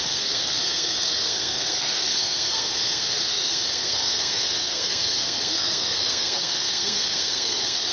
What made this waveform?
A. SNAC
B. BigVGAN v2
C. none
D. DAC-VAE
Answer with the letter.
A